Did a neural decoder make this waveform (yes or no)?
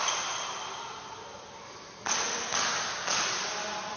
no